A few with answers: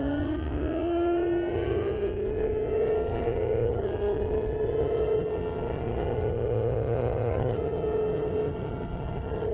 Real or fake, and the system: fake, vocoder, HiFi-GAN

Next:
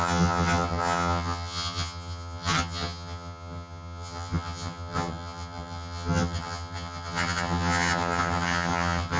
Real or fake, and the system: fake, vocoder, HiFi-GAN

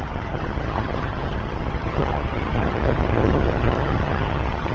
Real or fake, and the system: fake, vocoder, HiFi-GAN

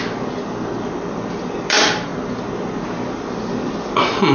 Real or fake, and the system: real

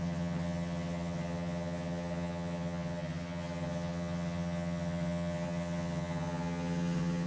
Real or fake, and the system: fake, vocoder, HiFi-GAN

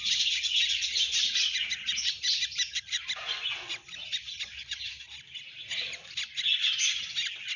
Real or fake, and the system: real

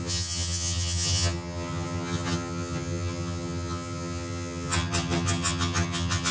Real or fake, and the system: fake, vocoder, HiFi-GAN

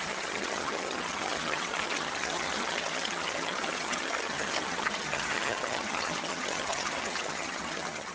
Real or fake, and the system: fake, vocoder, HiFi-GAN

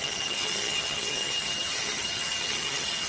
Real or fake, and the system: fake, vocoder, HiFi-GAN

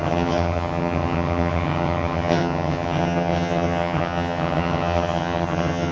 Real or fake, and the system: fake, vocoder, HiFi-GAN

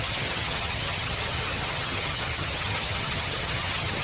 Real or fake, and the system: fake, vocoder, HiFi-GAN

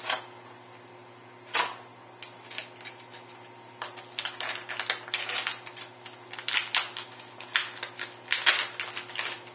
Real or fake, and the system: real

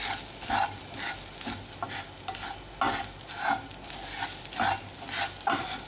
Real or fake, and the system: real